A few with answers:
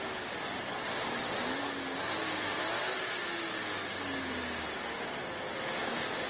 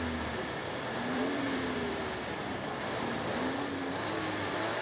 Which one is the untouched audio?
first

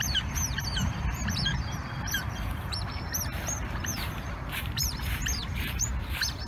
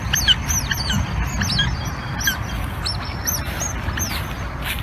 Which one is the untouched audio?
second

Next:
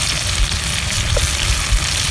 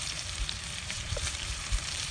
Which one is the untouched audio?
first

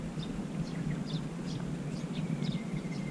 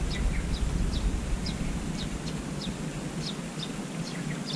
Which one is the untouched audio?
second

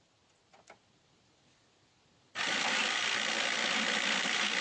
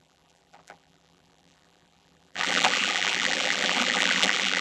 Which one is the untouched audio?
first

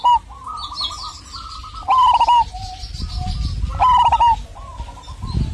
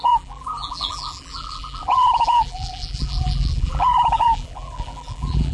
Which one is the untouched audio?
first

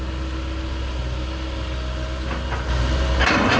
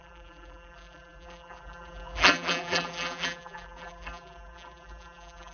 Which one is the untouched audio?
first